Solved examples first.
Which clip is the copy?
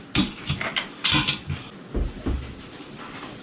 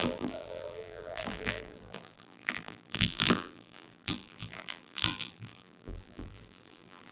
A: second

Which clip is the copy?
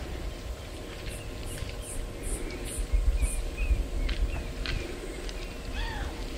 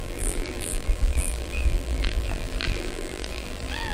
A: second